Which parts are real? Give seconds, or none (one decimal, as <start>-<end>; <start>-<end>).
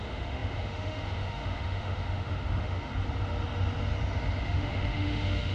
2.9-4.4